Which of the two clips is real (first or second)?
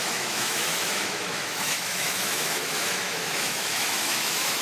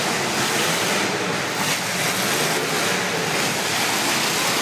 second